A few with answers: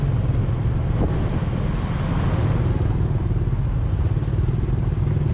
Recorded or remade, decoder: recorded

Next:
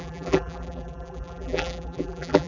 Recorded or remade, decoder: remade, vocoder, BigVGAN v2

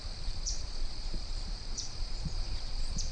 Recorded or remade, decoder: remade, vocoder, BigVGAN v2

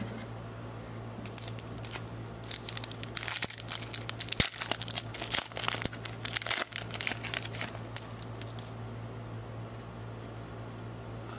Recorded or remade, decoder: recorded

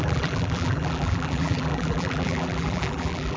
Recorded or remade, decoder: remade, vocoder, BigVGAN v2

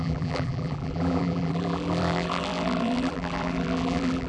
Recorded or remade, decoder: remade, vocoder, BigVGAN v2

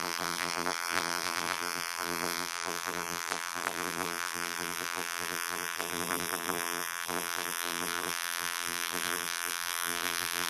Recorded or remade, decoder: remade, vocoder, BigVGAN v2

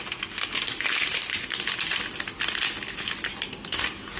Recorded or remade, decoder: recorded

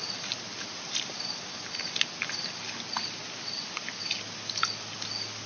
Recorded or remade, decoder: recorded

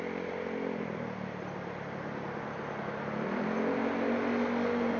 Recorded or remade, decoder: recorded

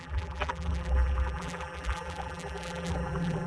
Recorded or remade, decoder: remade, vocoder, BigVGAN v2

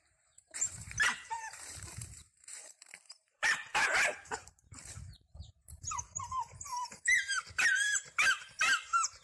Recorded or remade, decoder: remade, vocoder, BigVGAN v2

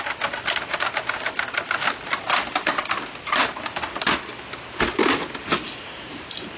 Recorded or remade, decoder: recorded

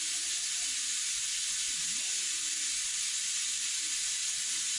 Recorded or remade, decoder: remade, vocoder, BigVGAN v2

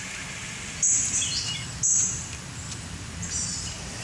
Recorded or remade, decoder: recorded